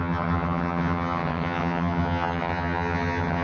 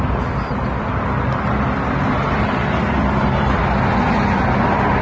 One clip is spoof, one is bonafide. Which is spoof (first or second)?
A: first